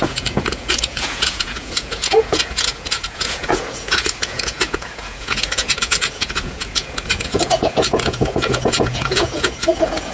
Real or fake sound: fake